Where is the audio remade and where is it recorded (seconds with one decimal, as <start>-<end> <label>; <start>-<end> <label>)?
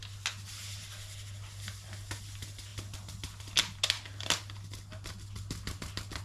0.0-6.2 recorded